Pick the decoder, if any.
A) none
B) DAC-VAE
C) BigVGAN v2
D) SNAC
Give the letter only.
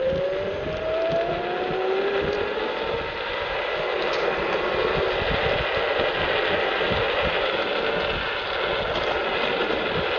A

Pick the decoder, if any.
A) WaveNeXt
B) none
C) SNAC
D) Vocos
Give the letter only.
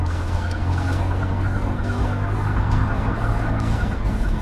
C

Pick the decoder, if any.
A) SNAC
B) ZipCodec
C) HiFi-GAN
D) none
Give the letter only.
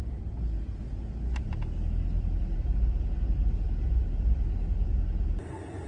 D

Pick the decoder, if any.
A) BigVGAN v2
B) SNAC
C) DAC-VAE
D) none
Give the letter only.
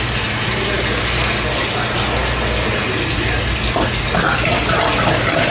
D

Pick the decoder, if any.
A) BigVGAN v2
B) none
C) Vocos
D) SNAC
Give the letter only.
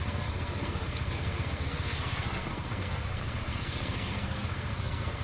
D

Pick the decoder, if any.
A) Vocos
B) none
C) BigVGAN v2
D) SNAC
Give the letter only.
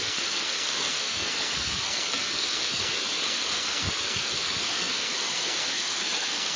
D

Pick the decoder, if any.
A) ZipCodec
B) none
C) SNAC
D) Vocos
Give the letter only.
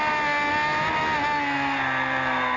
B